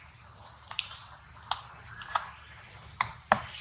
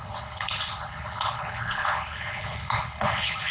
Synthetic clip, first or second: second